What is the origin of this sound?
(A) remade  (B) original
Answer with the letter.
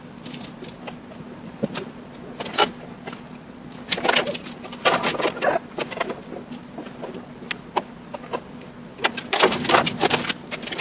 B